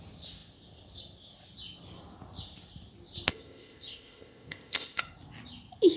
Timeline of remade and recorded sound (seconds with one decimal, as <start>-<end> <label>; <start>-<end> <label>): 0.0-3.3 recorded; 3.3-5.0 remade; 5.0-6.0 recorded